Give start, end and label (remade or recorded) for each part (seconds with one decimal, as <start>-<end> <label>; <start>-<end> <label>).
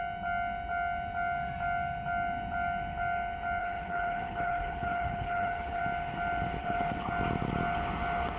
0.0-3.6 recorded; 3.6-5.8 remade; 5.8-6.6 recorded; 6.6-7.1 remade; 7.1-8.4 recorded